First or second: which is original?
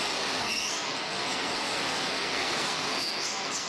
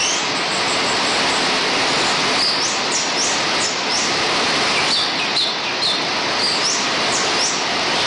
second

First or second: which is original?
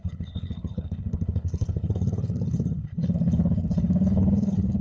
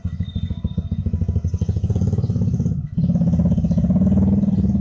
second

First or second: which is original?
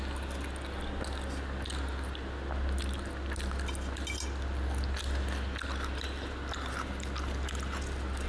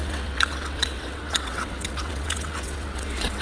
first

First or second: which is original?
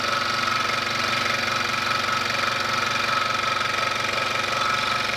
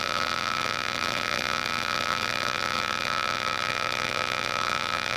first